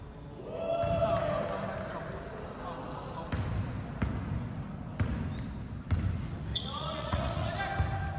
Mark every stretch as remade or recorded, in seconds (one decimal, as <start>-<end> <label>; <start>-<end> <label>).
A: 0.0-6.5 recorded; 6.5-7.6 remade; 7.6-8.2 recorded